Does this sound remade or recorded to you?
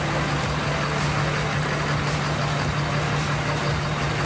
recorded